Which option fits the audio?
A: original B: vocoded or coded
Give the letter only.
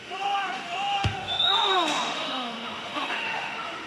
B